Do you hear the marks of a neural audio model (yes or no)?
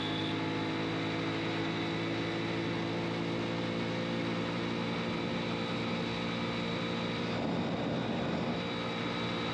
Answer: no